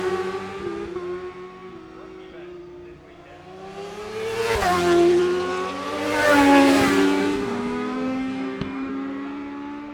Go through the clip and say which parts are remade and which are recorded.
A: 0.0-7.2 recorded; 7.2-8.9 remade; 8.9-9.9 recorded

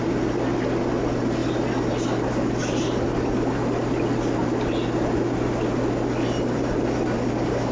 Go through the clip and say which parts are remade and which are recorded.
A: 0.0-7.7 recorded

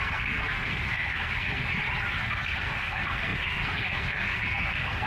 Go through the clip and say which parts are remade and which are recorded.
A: 0.0-1.7 remade; 1.7-2.2 recorded; 2.2-5.1 remade

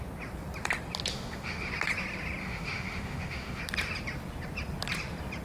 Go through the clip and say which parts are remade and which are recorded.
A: 0.0-1.1 recorded; 1.1-1.7 remade; 1.7-2.4 recorded; 2.4-3.6 remade; 3.6-5.4 recorded

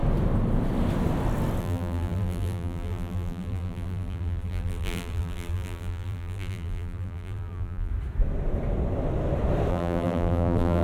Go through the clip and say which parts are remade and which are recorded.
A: 0.0-1.6 recorded; 1.6-7.9 remade; 7.9-9.7 recorded; 9.7-10.8 remade